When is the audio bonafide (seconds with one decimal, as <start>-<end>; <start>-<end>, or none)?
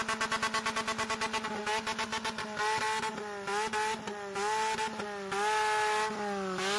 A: 0.0-6.8